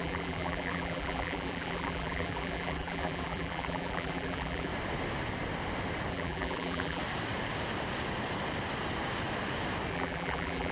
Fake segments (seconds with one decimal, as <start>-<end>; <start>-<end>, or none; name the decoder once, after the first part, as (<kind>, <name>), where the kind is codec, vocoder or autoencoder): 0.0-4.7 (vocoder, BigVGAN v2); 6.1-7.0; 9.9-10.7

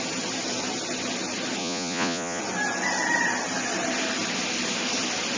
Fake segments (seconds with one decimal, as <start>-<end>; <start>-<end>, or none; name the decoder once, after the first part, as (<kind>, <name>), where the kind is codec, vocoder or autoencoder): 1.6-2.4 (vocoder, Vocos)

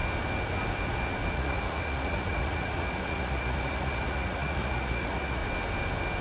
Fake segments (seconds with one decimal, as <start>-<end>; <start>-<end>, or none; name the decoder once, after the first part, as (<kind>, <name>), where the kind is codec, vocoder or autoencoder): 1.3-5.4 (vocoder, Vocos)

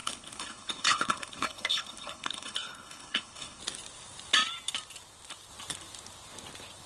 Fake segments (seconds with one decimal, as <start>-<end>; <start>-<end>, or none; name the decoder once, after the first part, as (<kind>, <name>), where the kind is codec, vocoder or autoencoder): 0.0-3.6 (codec, HILCodec)

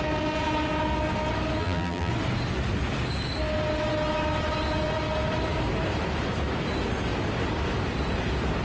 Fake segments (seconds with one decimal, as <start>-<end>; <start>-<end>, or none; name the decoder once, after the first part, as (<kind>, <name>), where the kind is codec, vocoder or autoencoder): 1.6-2.1 (vocoder, BigVGAN v2)

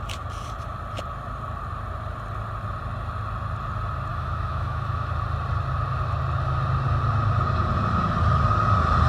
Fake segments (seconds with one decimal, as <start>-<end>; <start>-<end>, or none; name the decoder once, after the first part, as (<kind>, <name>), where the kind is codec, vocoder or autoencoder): 4.1-5.1 (autoencoder, DAC-VAE)

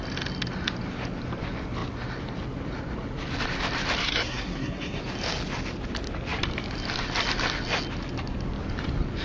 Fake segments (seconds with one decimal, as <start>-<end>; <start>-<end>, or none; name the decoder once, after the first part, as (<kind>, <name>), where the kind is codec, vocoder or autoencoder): 4.0-5.0 (codec, SNAC)

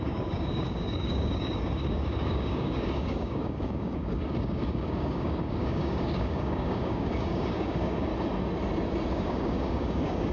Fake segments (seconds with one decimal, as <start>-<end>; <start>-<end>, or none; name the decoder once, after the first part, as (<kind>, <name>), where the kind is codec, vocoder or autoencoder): 0.0-8.1 (codec, DAC); 9.1-10.3